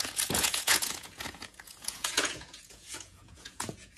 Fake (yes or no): yes